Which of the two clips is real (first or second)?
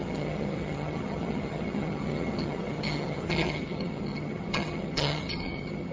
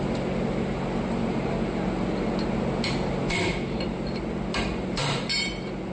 second